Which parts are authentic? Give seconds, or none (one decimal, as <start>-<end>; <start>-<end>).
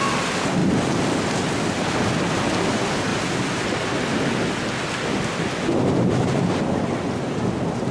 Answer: 0.0-7.9